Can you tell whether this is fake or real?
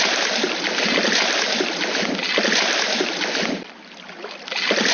real